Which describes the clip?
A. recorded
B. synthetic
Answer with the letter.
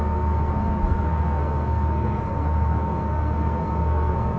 B